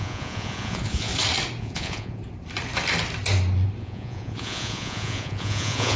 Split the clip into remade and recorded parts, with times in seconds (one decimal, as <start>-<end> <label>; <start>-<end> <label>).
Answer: 0.0-1.1 remade; 1.1-1.6 recorded; 1.6-2.2 remade; 2.2-3.8 recorded; 3.8-6.0 remade